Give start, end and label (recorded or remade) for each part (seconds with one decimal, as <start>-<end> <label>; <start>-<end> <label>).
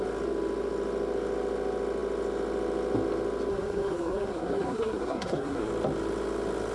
0.0-3.5 recorded; 3.5-5.7 remade; 5.7-6.7 recorded